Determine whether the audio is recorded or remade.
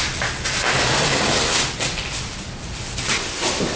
recorded